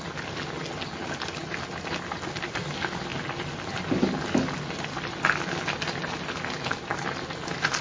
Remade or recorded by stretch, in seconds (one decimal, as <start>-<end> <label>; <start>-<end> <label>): 0.0-7.8 recorded